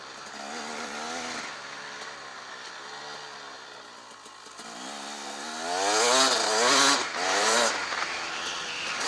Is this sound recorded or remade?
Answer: recorded